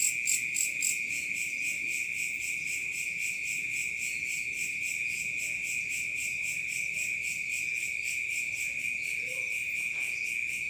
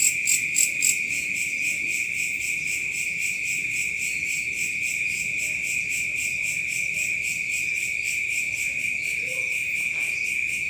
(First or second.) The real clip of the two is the first